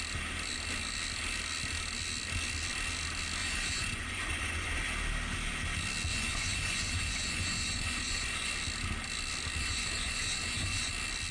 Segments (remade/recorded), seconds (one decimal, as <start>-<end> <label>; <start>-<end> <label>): 0.0-3.4 recorded; 3.4-4.8 remade; 4.8-6.1 recorded; 6.1-8.5 remade; 8.5-9.6 recorded; 9.6-10.9 remade; 10.9-11.3 recorded